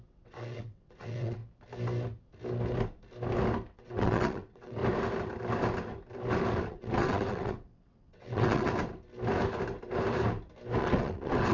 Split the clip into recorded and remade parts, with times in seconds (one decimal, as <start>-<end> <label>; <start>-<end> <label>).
0.0-1.4 remade; 1.4-3.7 recorded; 3.7-4.8 remade; 4.8-6.7 recorded; 6.7-8.7 remade; 8.7-10.8 recorded; 10.8-11.5 remade